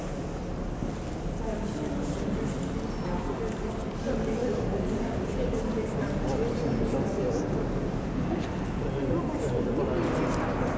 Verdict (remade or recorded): recorded